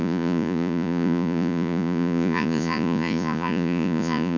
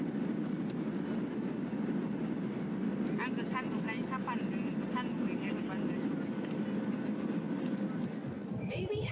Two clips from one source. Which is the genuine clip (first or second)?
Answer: second